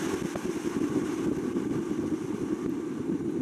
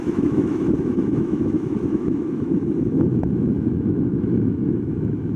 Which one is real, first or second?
first